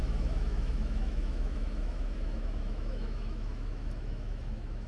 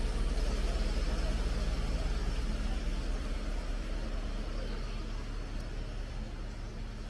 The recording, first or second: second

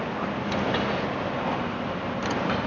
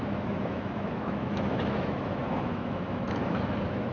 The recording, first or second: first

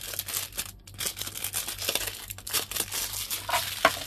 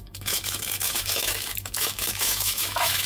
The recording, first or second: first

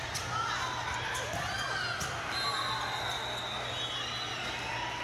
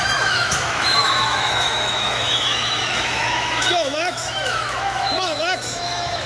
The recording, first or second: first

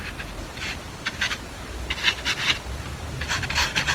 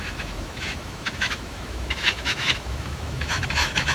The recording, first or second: first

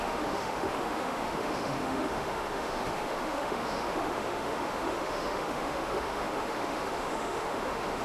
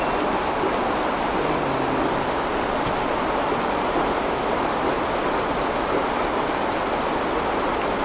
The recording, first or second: second